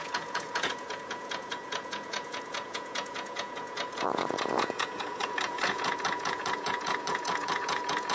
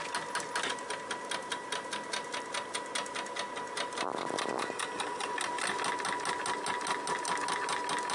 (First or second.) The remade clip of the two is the first